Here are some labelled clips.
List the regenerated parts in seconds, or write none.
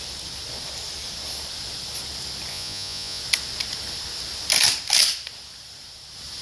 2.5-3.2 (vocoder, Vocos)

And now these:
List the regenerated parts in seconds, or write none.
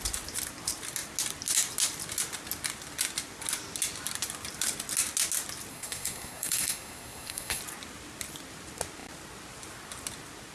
5.7-7.6 (codec, SNAC)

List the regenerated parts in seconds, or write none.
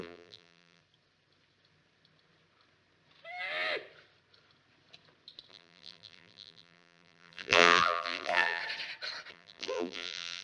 0.0-0.8 (vocoder, BigVGAN v2); 5.5-8.6; 9.3-10.4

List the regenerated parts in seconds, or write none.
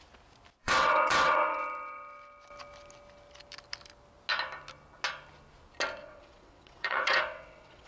0.6-1.6 (vocoder, WaveNeXt); 6.0-7.9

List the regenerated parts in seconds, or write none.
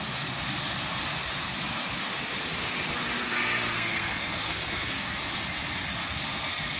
3.2-5.2 (codec, SNAC); 6.0-6.8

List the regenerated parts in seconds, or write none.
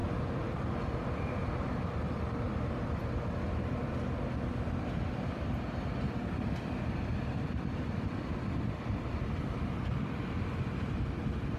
none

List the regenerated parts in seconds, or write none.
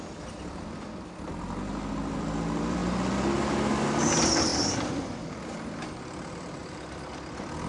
0.0-0.9 (vocoder, BigVGAN v2); 1.9-2.8; 4.0-6.6; 7.1-7.7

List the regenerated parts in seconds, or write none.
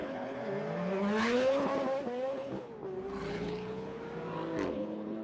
0.0-0.4 (codec, HILCodec); 1.2-1.7; 2.3-2.7; 3.3-4.0; 4.7-5.2